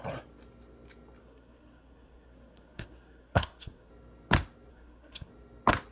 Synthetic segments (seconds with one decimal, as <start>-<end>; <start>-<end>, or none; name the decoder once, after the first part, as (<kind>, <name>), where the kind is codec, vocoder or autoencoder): 1.2-3.9 (codec, SNAC); 4.7-5.3